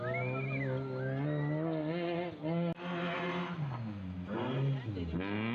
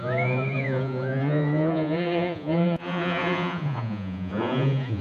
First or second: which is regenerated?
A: second